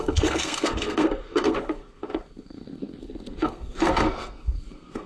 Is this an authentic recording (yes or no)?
no